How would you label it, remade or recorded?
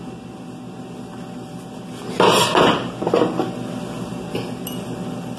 recorded